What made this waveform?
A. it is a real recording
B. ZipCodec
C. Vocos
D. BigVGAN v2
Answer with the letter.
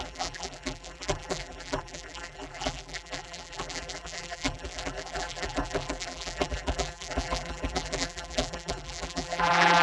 D